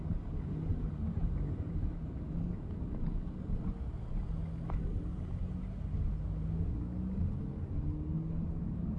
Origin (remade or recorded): recorded